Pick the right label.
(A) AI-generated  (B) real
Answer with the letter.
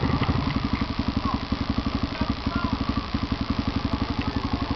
B